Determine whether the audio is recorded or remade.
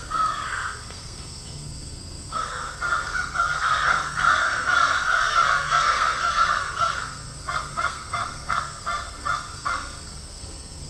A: remade